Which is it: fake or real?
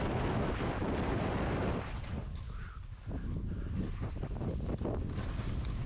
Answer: real